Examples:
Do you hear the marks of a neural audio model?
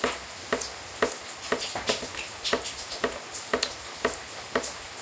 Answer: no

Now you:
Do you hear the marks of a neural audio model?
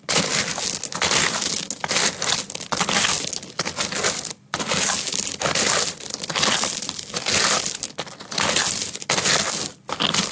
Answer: no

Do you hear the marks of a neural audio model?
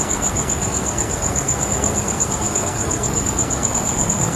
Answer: yes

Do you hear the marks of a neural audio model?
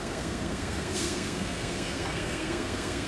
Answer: yes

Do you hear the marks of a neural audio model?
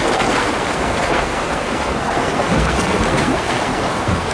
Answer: yes